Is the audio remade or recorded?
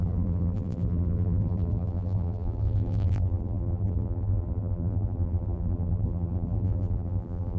remade